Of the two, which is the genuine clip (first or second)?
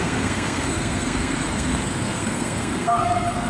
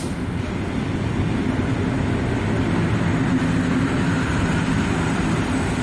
second